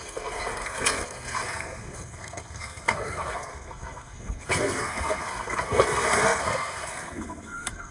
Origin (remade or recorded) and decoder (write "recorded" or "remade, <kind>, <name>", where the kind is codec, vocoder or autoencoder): remade, codec, SNAC